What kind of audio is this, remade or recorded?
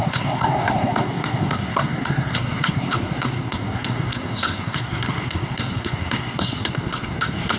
remade